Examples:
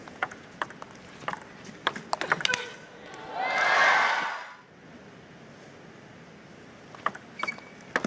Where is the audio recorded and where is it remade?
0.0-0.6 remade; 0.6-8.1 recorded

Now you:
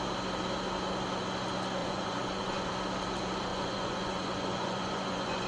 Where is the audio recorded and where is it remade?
0.0-1.8 recorded; 1.8-2.7 remade; 2.7-3.5 recorded; 3.5-5.5 remade

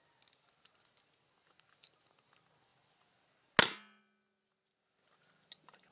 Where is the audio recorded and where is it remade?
0.0-5.9 recorded

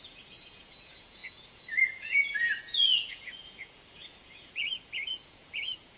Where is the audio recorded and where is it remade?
0.0-6.0 remade

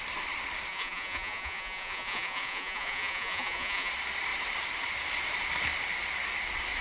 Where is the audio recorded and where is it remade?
0.0-0.7 recorded; 0.7-3.9 remade; 3.9-6.8 recorded